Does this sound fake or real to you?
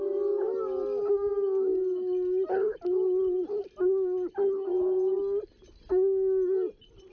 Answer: real